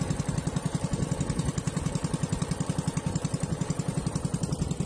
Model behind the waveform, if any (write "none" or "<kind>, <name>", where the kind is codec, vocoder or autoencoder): none